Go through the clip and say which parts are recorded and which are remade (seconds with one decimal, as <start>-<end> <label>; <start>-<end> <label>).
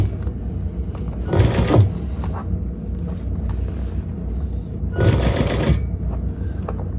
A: 0.0-7.0 recorded